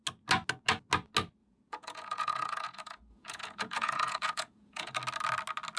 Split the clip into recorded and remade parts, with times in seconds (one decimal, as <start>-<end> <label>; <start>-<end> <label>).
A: 0.0-1.4 recorded; 1.4-4.9 remade; 4.9-5.8 recorded